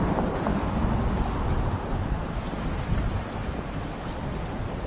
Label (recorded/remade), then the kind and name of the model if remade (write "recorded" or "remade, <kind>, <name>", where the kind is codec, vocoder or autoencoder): recorded